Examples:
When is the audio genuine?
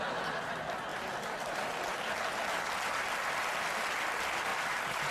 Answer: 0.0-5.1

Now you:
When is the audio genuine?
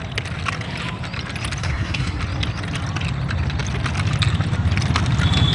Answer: 0.0-1.6; 2.2-5.5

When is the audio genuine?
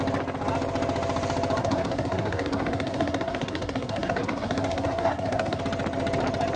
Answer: 0.0-1.6; 5.6-6.6